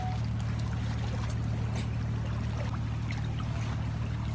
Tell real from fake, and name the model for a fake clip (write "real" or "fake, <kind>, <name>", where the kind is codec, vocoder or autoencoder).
real